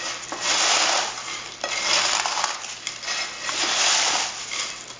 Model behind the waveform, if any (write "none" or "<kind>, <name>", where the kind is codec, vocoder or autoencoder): none